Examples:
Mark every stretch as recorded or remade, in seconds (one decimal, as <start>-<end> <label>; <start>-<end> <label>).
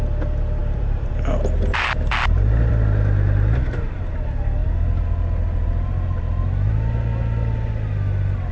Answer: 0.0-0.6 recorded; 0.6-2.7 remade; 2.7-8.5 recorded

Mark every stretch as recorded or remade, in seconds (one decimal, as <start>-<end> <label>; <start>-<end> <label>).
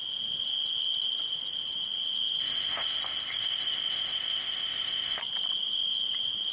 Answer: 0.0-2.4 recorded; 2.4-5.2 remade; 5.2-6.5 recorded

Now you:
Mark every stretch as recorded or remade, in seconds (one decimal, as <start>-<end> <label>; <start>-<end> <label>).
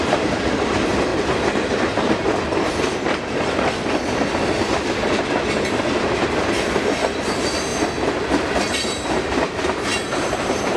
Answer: 0.0-1.1 remade; 1.1-5.7 recorded; 5.7-7.7 remade; 7.7-8.7 recorded; 8.7-10.8 remade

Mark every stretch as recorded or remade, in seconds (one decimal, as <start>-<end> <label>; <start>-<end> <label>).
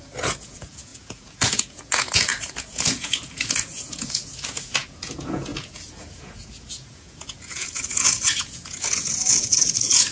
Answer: 0.0-10.1 remade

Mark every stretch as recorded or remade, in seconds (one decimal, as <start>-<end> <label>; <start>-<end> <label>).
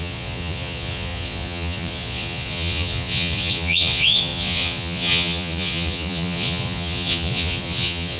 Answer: 0.0-8.2 remade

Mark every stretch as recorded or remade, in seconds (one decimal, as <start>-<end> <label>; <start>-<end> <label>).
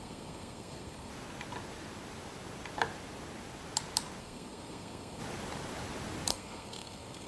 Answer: 0.0-1.1 remade; 1.1-4.2 recorded; 4.2-5.2 remade; 5.2-6.3 recorded; 6.3-7.3 remade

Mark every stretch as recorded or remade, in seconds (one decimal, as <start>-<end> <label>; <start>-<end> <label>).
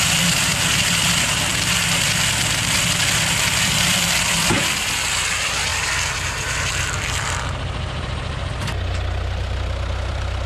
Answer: 0.0-1.5 remade; 1.5-3.0 recorded; 3.0-5.7 remade; 5.7-6.4 recorded; 6.4-10.5 remade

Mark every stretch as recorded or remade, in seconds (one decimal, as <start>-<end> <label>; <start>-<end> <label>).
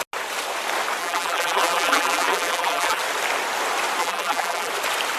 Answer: 0.0-1.0 recorded; 1.0-3.0 remade; 3.0-4.0 recorded; 4.0-4.7 remade; 4.7-5.2 recorded